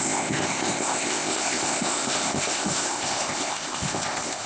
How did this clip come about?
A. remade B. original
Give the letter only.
A